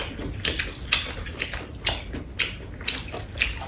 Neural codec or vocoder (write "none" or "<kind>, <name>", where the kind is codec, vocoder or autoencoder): none